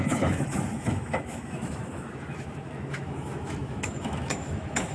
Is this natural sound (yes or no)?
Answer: no